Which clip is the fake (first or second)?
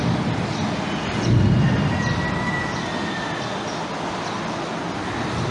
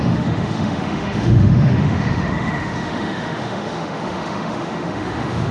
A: second